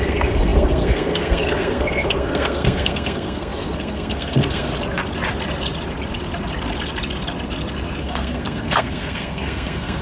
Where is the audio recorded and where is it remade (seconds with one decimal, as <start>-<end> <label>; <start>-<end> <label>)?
0.0-4.7 remade; 4.7-8.0 recorded; 8.0-10.0 remade